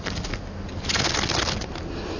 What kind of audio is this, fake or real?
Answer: real